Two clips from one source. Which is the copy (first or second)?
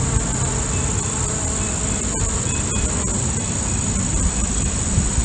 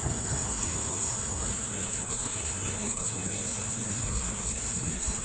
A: second